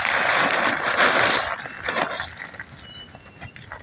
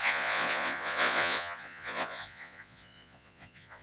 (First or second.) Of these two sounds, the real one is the first